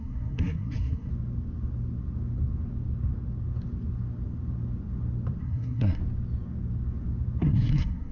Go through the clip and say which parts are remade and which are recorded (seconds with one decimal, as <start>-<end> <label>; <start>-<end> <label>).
0.0-1.1 remade; 1.1-5.4 recorded; 5.4-6.0 remade; 6.0-7.4 recorded; 7.4-8.1 remade